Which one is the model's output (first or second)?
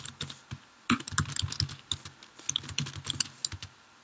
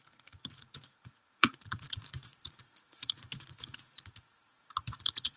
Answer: second